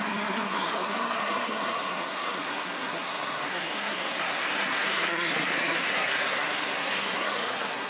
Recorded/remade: remade